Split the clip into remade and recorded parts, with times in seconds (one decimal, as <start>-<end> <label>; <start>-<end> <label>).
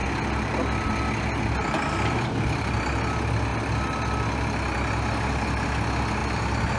0.0-6.8 recorded